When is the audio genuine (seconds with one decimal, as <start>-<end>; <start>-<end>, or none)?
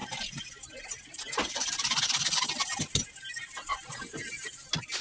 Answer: 2.8-5.0